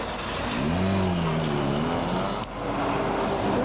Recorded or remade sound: recorded